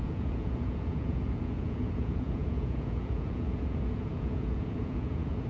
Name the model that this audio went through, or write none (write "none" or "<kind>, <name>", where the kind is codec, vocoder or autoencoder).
vocoder, Vocos